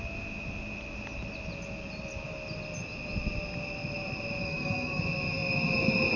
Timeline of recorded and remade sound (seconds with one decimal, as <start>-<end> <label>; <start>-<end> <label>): 0.0-4.4 recorded; 4.4-5.0 remade; 5.0-6.2 recorded